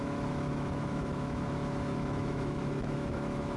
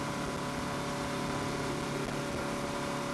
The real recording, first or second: second